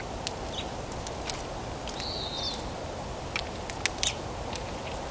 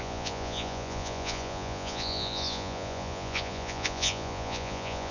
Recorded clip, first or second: first